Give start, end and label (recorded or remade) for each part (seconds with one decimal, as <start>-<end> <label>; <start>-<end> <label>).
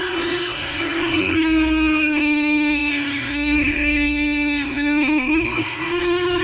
0.0-6.4 remade